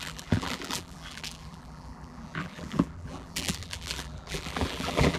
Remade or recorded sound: remade